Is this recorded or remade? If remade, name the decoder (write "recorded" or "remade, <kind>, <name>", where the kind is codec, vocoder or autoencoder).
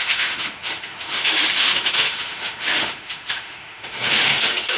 remade, autoencoder, DAC-VAE